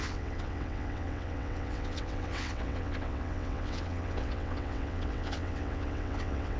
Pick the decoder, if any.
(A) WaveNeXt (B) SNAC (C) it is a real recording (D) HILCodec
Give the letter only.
A